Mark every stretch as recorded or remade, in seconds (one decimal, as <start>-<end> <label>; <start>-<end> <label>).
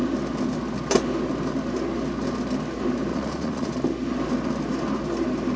0.0-3.1 recorded; 3.1-3.7 remade; 3.7-5.6 recorded